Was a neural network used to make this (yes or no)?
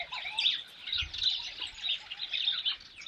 no